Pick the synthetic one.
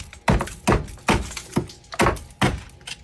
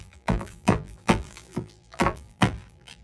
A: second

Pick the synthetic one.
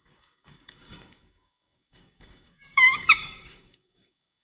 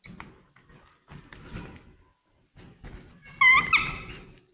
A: first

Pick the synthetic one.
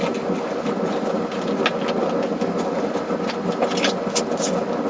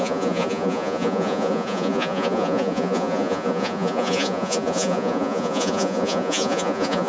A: second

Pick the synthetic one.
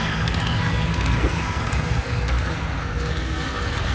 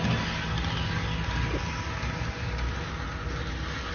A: first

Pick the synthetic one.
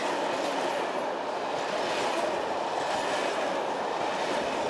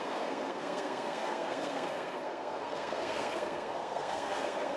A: second